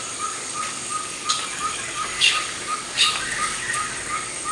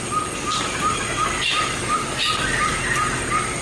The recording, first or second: second